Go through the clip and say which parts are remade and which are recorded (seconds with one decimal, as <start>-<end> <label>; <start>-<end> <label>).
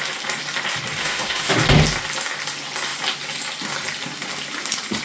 0.0-1.0 recorded; 1.0-1.5 remade; 1.5-5.0 recorded